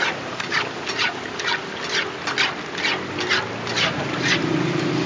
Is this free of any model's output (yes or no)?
yes